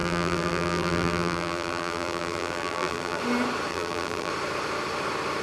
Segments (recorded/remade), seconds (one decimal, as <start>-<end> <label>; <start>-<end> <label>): 0.0-3.2 remade; 3.2-3.7 recorded; 3.7-4.3 remade; 4.3-5.4 recorded